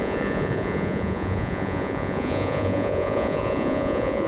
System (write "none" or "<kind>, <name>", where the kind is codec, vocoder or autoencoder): vocoder, Vocos